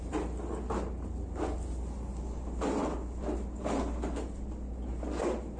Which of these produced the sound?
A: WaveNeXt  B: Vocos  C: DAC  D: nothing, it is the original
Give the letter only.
D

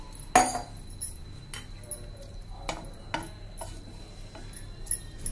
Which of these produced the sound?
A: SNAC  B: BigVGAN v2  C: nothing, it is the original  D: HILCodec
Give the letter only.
C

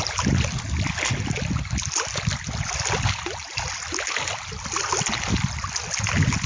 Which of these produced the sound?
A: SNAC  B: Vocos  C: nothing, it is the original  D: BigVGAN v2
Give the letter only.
C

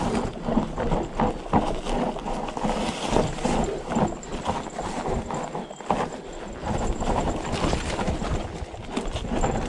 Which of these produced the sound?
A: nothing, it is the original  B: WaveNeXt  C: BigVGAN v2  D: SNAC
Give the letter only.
A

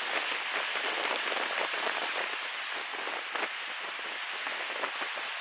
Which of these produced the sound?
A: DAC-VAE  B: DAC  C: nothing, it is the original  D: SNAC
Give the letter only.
C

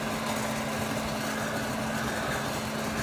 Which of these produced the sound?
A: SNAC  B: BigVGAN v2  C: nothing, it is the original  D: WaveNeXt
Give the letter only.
C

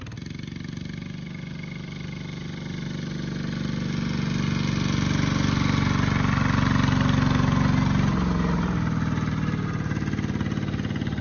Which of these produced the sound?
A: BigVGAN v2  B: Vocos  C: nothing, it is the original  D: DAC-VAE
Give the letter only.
C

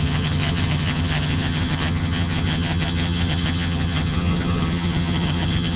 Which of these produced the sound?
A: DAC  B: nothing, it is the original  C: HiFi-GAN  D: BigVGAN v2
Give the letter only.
C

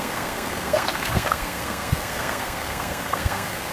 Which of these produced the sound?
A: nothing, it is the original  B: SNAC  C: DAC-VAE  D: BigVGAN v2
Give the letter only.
B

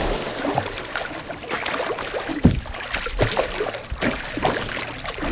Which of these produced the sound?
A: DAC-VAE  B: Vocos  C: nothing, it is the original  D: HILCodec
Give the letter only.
C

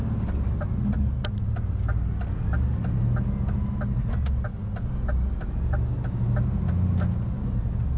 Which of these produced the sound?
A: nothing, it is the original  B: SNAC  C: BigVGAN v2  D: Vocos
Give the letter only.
A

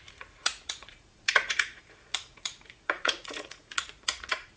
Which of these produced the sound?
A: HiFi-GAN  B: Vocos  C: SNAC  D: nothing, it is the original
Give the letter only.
B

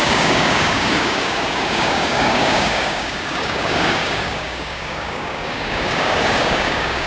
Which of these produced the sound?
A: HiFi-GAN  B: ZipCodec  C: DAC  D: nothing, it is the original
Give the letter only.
C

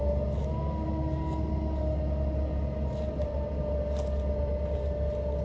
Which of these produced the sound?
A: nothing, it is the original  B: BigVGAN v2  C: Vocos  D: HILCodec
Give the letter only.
A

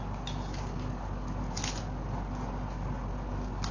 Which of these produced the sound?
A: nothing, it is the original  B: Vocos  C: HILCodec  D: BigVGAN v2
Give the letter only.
A